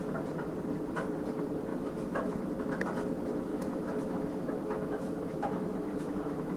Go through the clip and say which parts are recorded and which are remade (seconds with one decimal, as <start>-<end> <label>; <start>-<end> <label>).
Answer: 0.0-1.7 recorded; 1.7-2.4 remade; 2.4-3.5 recorded; 3.5-6.6 remade